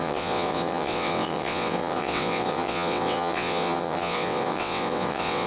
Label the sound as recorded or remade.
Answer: remade